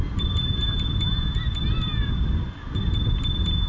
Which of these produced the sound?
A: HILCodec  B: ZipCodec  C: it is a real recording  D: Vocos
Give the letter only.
C